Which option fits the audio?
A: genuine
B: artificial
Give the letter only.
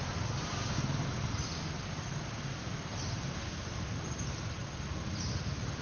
A